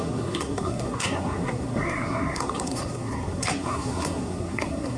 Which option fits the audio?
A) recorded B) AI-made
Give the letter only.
B